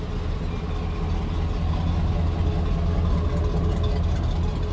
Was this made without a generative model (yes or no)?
yes